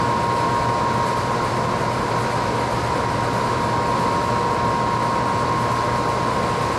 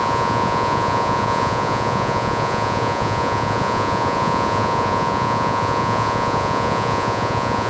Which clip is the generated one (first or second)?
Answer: second